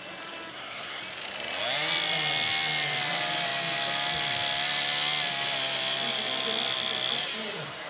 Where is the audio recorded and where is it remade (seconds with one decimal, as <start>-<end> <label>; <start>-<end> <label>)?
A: 0.0-0.5 recorded; 0.5-1.0 remade; 1.0-7.9 recorded